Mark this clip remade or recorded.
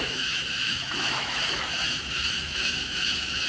remade